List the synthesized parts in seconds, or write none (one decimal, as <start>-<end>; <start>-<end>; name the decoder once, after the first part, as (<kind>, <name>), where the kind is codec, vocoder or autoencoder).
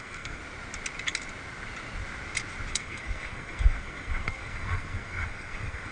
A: 0.0-0.4 (codec, SNAC); 2.7-5.9